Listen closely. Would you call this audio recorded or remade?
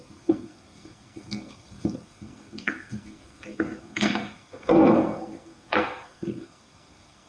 remade